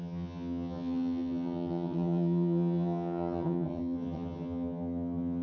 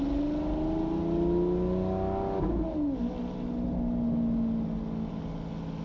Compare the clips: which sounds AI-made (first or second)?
first